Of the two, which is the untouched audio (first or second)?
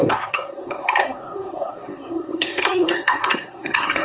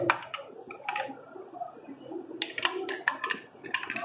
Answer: second